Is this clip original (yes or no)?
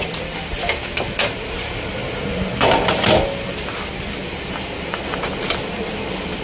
yes